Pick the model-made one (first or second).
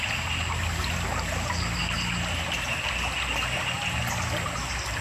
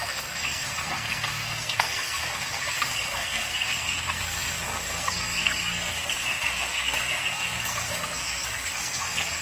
second